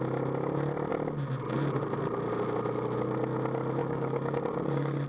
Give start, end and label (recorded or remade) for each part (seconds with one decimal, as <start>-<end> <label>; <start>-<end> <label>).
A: 0.0-3.8 recorded; 3.8-5.1 remade